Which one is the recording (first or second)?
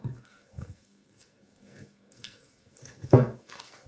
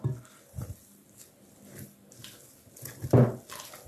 second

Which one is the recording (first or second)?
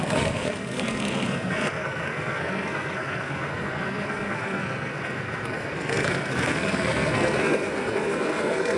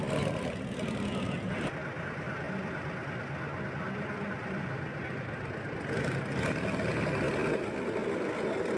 second